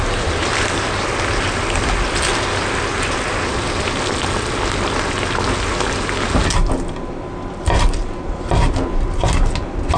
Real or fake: real